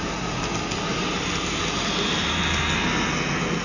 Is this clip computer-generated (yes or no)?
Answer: no